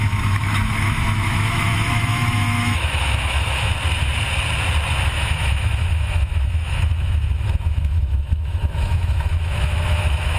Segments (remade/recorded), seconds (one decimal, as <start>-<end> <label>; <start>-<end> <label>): 0.0-3.7 remade; 3.7-5.0 recorded; 5.0-10.4 remade

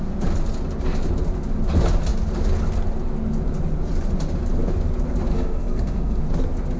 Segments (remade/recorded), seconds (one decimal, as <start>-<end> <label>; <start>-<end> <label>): 0.0-5.3 recorded; 5.3-6.2 remade; 6.2-6.8 recorded

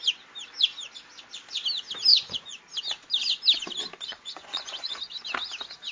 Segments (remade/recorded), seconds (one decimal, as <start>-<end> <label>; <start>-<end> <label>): 0.0-2.1 recorded; 2.1-2.6 remade; 2.6-4.1 recorded; 4.1-5.0 remade; 5.0-5.9 recorded

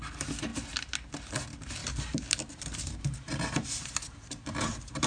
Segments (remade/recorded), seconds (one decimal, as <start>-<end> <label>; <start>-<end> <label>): 0.0-1.8 recorded; 1.8-5.1 remade

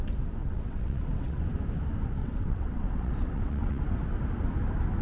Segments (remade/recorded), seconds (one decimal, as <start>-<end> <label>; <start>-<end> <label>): 0.0-0.4 recorded; 0.4-1.4 remade; 1.4-2.2 recorded; 2.2-3.8 remade; 3.8-5.0 recorded

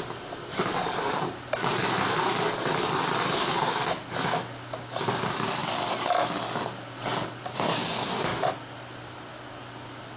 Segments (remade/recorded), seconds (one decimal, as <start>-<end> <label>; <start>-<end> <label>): 0.0-1.8 remade; 1.8-5.1 recorded; 5.1-5.6 remade; 5.6-7.1 recorded; 7.1-8.3 remade; 8.3-10.2 recorded

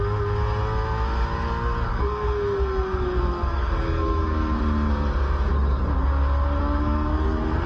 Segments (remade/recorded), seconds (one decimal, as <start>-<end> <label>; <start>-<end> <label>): 0.0-1.9 recorded; 1.9-4.6 remade; 4.6-6.6 recorded; 6.6-7.7 remade

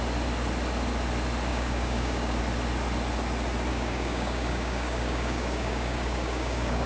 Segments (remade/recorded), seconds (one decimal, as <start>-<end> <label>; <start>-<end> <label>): 0.0-1.5 recorded; 1.5-2.4 remade; 2.4-3.7 recorded; 3.7-6.9 remade